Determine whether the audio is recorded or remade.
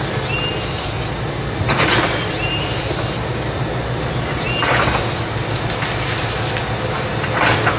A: recorded